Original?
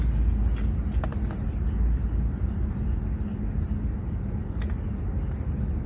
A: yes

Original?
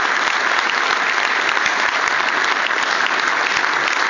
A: yes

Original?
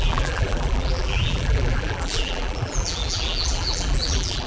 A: no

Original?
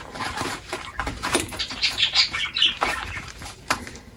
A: no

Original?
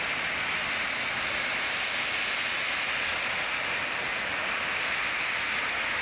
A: yes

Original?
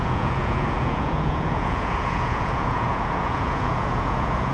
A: no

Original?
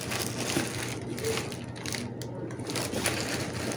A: yes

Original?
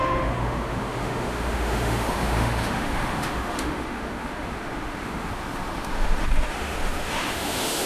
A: no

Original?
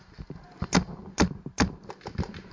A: yes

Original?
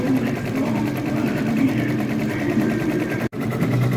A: no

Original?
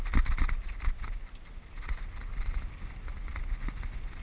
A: yes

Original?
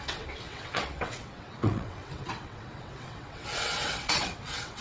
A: no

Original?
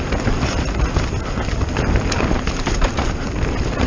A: yes